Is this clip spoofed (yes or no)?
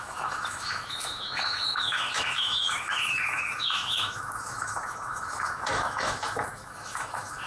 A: yes